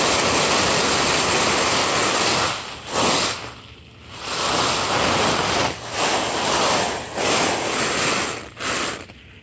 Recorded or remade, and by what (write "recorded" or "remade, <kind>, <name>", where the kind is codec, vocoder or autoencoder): recorded